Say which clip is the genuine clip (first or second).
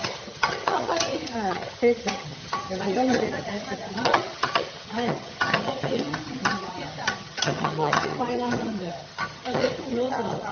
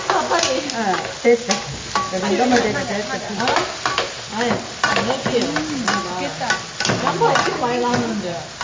second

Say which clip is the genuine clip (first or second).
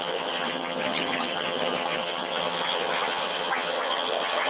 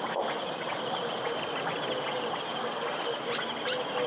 second